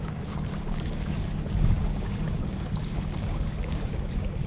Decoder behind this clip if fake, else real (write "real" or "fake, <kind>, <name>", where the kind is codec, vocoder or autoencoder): fake, codec, DAC